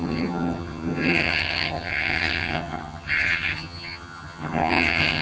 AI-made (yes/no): yes